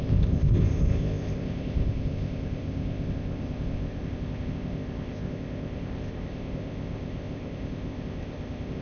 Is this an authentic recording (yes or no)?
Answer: no